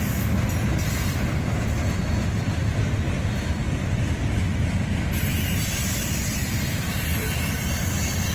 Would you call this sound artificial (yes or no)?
no